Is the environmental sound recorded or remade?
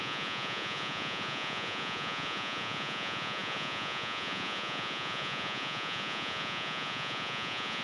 remade